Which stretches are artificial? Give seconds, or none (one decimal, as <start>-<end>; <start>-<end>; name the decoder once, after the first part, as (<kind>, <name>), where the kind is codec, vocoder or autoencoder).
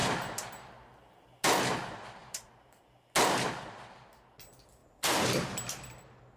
2.2-2.8 (vocoder, BigVGAN v2); 4.8-5.8